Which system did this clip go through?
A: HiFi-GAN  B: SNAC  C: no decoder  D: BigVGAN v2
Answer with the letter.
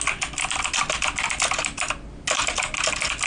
C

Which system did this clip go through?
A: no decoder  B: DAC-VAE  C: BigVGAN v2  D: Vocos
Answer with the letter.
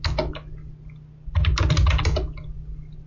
A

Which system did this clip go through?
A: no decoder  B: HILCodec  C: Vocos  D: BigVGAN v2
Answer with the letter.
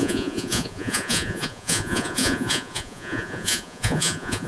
C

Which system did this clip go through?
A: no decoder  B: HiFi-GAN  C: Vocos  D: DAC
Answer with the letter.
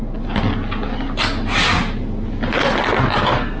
A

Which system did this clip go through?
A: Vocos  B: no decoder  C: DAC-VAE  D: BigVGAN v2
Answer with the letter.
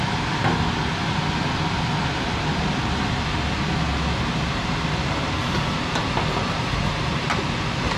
B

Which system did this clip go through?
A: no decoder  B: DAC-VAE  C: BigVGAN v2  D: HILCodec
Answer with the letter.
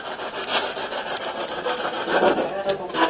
A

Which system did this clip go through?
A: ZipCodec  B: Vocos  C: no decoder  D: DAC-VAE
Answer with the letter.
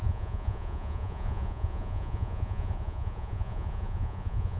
B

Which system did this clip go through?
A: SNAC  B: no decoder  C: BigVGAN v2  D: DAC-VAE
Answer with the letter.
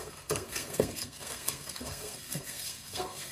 A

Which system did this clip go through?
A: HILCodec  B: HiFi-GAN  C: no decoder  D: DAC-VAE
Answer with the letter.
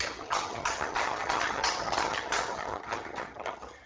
B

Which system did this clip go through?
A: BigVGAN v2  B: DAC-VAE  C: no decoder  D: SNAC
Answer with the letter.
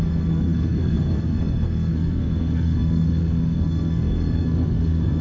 D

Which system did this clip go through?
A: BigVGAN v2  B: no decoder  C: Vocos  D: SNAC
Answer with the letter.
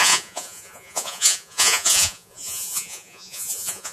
C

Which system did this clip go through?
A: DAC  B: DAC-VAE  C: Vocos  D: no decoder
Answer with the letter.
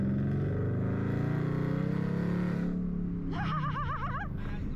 D